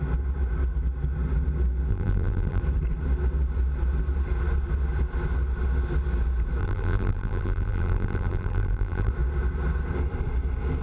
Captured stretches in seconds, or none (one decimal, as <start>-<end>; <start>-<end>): 0.0-1.9; 2.6-6.6; 9.1-10.8